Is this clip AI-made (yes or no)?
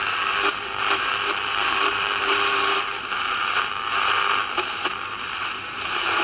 yes